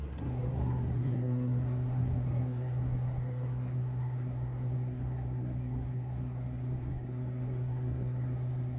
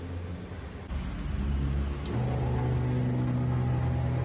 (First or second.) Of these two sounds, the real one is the second